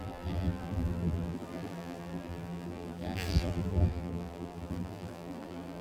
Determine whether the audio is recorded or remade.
remade